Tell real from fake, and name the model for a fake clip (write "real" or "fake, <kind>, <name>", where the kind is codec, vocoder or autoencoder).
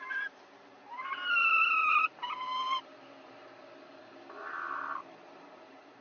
fake, vocoder, BigVGAN v2